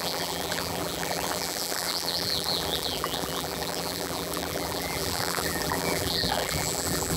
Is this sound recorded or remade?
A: remade